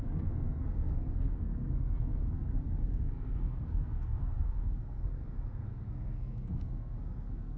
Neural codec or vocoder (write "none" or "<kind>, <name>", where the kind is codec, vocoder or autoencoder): codec, SNAC